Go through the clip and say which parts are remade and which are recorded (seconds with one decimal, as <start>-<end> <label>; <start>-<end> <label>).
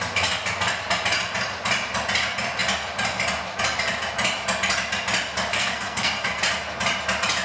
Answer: 0.0-5.5 recorded; 5.5-6.4 remade; 6.4-7.4 recorded